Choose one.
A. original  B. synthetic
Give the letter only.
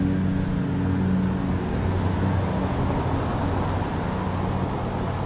A